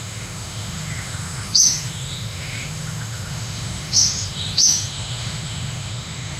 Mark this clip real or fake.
fake